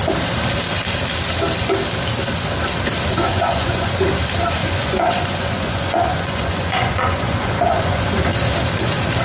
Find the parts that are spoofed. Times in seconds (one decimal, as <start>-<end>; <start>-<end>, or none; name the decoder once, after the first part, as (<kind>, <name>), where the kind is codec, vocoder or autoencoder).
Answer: 3.3-4.0 (vocoder, Vocos); 4.6-8.1